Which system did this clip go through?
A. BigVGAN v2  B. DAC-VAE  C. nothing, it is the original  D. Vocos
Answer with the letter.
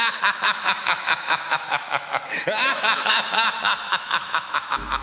B